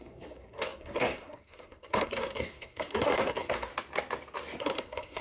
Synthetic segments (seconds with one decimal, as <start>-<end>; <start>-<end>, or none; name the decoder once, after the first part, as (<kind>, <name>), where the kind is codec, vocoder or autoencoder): 0.0-3.7 (codec, SNAC); 4.6-5.2